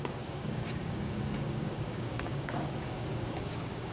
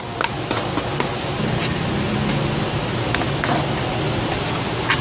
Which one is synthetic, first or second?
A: first